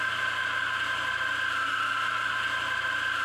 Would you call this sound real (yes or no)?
yes